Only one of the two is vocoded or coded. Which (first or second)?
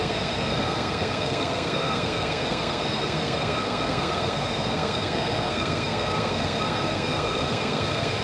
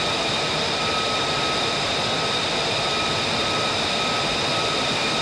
first